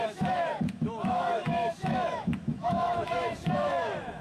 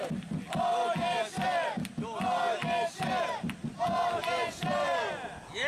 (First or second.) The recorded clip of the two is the second